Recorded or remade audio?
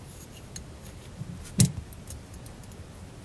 recorded